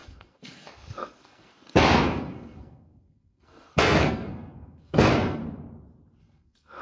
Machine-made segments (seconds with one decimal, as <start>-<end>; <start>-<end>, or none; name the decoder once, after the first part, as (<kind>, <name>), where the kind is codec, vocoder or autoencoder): 0.0-5.4 (codec, SNAC); 6.2-6.8